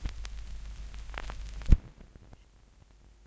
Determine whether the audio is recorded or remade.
recorded